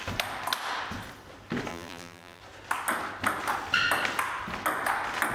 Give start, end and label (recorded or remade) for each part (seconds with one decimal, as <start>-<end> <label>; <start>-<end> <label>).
0.0-1.7 recorded; 1.7-2.4 remade; 2.4-5.3 recorded